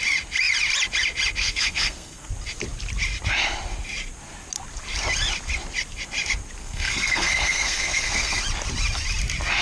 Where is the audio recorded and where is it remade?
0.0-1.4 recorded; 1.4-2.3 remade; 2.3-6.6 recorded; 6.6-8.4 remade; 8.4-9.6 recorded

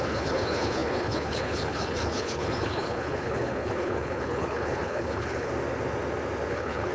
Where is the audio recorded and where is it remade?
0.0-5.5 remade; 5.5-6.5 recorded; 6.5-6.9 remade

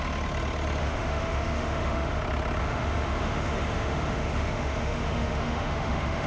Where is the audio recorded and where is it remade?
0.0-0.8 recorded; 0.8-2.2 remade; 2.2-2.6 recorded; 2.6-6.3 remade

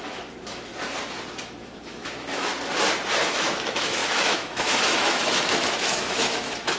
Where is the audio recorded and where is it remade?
0.0-0.7 remade; 0.7-1.4 recorded; 1.4-2.5 remade; 2.5-3.2 recorded; 3.2-6.8 remade

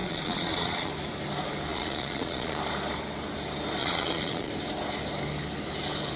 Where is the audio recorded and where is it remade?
0.0-0.9 remade; 0.9-1.7 recorded; 1.7-2.6 remade; 2.6-3.8 recorded; 3.8-4.5 remade; 4.5-6.2 recorded

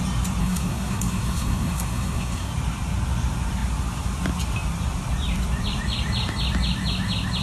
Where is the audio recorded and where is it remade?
0.0-0.4 recorded; 0.4-2.5 remade; 2.5-7.4 recorded